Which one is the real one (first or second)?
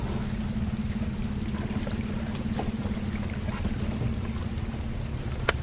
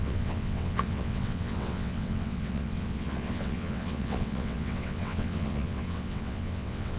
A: first